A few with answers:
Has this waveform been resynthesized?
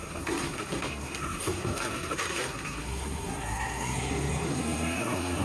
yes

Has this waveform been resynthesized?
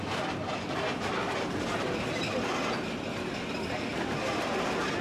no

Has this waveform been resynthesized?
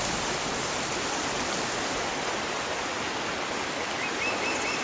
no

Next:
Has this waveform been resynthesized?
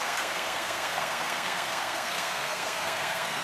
yes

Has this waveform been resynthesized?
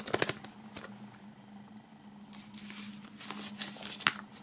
no